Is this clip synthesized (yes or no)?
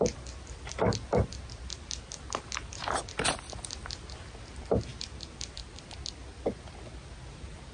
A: no